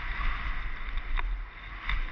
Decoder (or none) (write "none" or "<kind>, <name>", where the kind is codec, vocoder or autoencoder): none